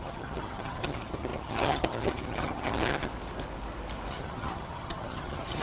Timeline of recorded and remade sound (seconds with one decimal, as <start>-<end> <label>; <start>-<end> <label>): 0.0-3.1 remade; 3.1-4.1 recorded; 4.1-5.6 remade

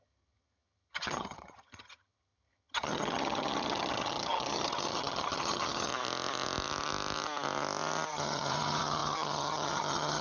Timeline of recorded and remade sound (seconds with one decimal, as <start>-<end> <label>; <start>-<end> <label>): 0.0-5.9 remade; 5.9-8.1 recorded; 8.1-10.2 remade

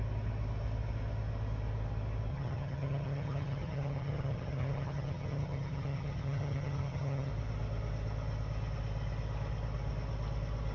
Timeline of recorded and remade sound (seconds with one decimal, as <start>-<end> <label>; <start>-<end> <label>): 0.0-2.3 recorded; 2.3-7.3 remade; 7.3-10.7 recorded

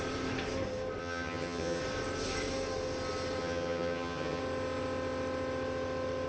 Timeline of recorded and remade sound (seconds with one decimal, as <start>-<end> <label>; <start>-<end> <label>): 0.0-1.0 recorded; 1.0-1.8 remade; 1.8-3.4 recorded; 3.4-4.4 remade; 4.4-6.3 recorded

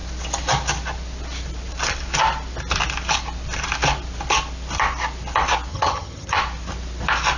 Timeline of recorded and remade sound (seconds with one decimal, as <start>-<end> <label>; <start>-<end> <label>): 0.0-5.7 recorded; 5.7-6.4 remade; 6.4-7.4 recorded

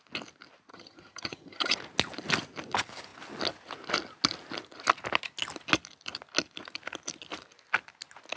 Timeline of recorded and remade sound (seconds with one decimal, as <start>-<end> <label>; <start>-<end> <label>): 0.0-0.7 recorded; 0.7-1.8 remade; 1.8-8.4 recorded

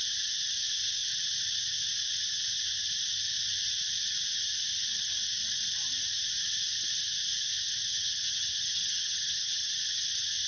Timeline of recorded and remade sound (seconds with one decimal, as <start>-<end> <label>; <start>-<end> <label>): 0.0-7.9 recorded; 7.9-9.7 remade; 9.7-10.5 recorded

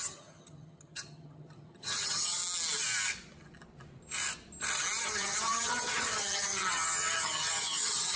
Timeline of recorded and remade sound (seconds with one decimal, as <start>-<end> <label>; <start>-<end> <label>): 0.0-2.4 remade; 2.4-5.0 recorded; 5.0-8.2 remade